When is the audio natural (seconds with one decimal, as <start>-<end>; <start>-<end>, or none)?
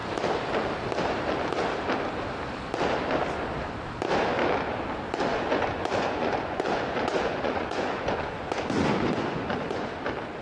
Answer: 0.0-5.3; 9.9-10.4